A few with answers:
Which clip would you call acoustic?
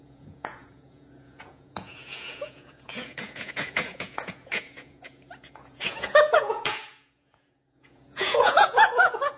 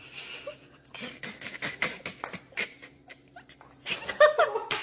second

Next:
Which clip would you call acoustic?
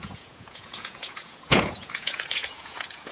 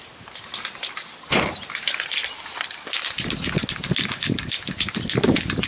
second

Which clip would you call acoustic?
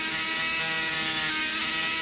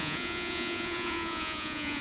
first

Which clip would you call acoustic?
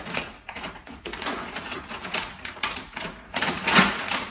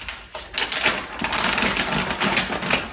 second